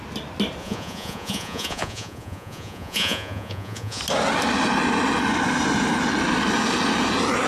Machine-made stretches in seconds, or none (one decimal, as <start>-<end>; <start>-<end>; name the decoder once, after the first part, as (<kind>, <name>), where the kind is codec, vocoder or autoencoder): 0.6-4.0 (vocoder, Vocos)